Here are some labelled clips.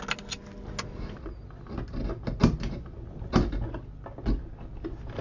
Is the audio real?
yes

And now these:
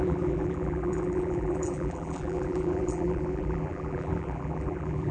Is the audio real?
no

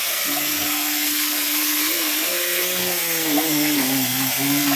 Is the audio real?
no